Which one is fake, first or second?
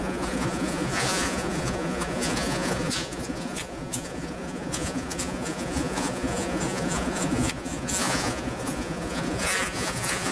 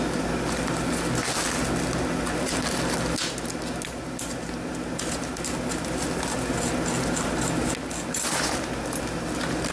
first